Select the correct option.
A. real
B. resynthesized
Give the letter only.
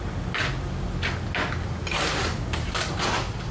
A